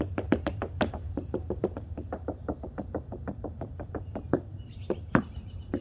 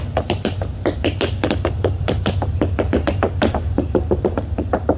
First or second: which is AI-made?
first